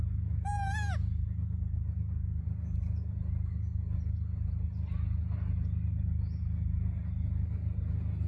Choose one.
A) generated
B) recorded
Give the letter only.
B